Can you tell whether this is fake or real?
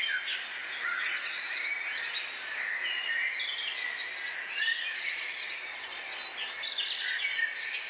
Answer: real